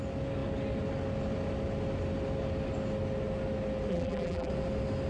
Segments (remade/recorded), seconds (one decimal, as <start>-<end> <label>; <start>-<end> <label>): 0.0-3.9 recorded; 3.9-4.5 remade; 4.5-5.1 recorded